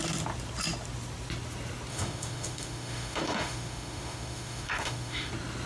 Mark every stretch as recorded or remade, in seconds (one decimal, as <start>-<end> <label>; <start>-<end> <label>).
0.0-1.9 recorded; 1.9-5.3 remade; 5.3-5.7 recorded